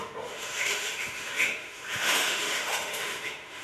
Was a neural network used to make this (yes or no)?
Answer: yes